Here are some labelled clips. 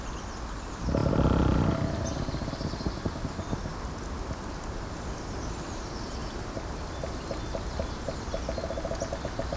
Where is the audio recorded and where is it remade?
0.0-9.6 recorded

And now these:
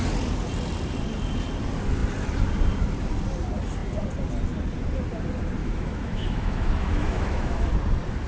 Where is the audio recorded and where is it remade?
0.0-5.6 recorded; 5.6-7.7 remade; 7.7-8.3 recorded

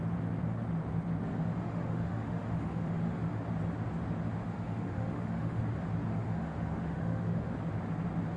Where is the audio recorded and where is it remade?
0.0-1.6 recorded; 1.6-3.4 remade; 3.4-4.4 recorded; 4.4-5.6 remade; 5.6-6.1 recorded; 6.1-7.5 remade; 7.5-8.4 recorded

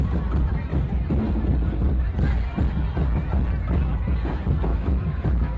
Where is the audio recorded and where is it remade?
0.0-4.7 recorded; 4.7-5.6 remade

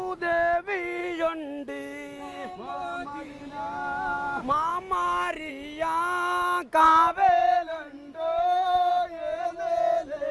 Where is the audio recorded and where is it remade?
0.0-1.0 recorded; 1.0-3.4 remade; 3.4-4.7 recorded; 4.7-5.5 remade; 5.5-7.4 recorded; 7.4-8.9 remade; 8.9-10.3 recorded

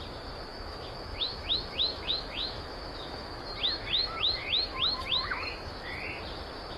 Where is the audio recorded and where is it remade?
0.0-0.5 recorded; 0.5-3.4 remade; 3.4-4.0 recorded; 4.0-5.9 remade; 5.9-6.8 recorded

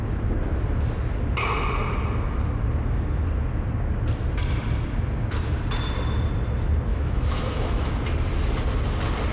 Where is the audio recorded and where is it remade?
0.0-6.9 recorded; 6.9-7.9 remade; 7.9-9.3 recorded

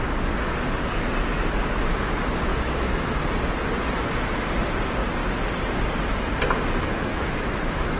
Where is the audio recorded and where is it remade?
0.0-2.5 recorded; 2.5-3.2 remade; 3.2-7.1 recorded; 7.1-8.0 remade